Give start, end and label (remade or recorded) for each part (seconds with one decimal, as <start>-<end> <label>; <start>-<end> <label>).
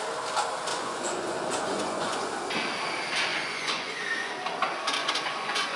0.0-0.7 recorded; 0.7-2.3 remade; 2.3-3.3 recorded; 3.3-4.3 remade; 4.3-5.0 recorded; 5.0-5.8 remade